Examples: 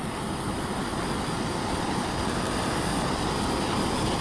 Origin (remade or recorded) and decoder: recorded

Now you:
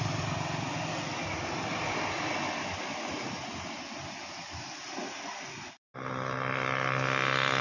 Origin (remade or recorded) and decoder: recorded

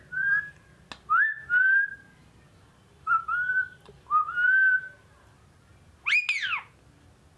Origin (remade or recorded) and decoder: recorded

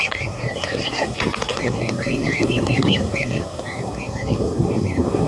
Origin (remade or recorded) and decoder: remade, codec, SNAC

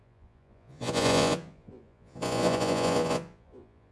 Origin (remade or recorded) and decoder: remade, vocoder, Vocos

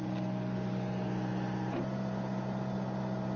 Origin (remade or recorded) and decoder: recorded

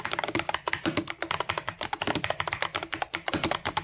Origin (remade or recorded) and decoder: remade, vocoder, BigVGAN v2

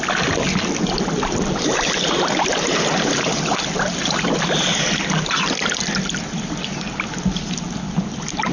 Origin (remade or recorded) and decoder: recorded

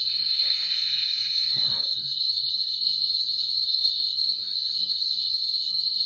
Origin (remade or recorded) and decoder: remade, codec, SNAC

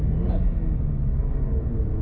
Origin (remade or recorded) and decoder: recorded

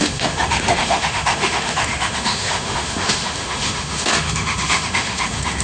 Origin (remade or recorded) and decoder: remade, autoencoder, DAC-VAE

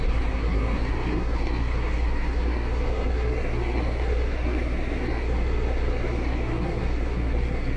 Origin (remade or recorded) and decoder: remade, codec, SNAC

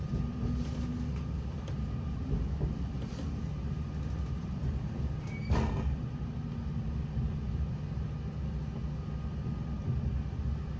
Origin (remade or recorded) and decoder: recorded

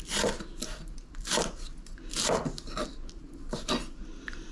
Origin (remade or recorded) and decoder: recorded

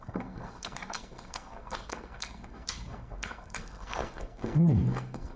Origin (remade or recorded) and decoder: remade, codec, SNAC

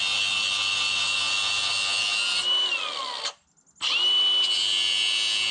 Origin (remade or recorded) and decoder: recorded